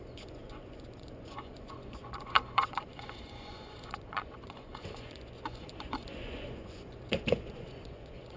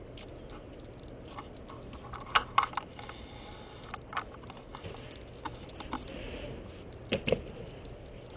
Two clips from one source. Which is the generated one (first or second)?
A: first